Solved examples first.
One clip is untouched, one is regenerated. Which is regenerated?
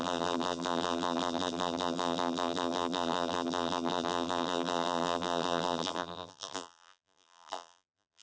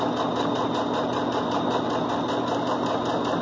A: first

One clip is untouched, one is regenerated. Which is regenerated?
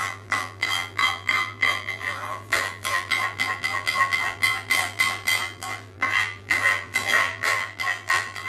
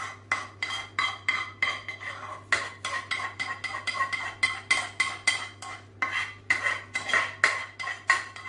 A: first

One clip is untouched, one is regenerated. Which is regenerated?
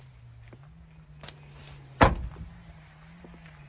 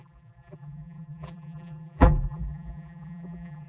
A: second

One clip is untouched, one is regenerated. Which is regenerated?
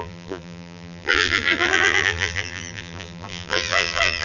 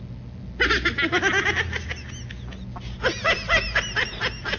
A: first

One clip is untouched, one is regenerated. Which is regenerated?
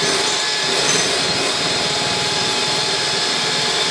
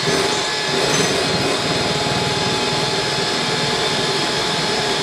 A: first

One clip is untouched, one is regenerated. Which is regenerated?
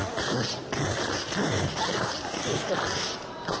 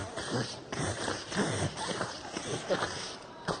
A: second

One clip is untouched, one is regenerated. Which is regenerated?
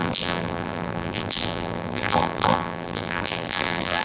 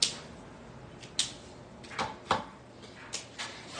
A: first